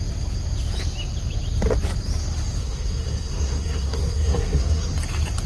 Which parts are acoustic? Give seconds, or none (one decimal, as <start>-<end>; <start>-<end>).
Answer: 0.0-2.6; 4.9-5.5